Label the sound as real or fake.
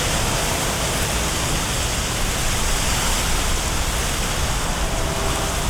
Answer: real